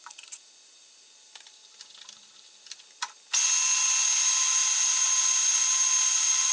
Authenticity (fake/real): fake